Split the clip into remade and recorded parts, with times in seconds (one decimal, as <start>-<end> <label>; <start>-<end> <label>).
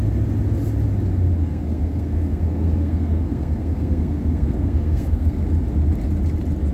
0.0-1.4 recorded; 1.4-5.4 remade; 5.4-6.7 recorded